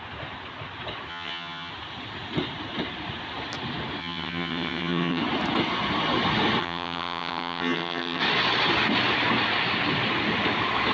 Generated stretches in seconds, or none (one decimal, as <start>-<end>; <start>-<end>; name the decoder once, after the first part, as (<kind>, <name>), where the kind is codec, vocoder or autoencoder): 1.1-1.7 (vocoder, HiFi-GAN); 4.0-5.2; 6.6-8.2